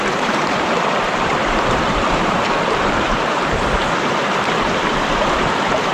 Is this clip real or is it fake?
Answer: fake